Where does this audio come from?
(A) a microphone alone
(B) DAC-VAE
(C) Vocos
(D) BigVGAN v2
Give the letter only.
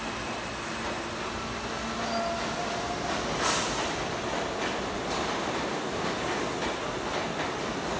A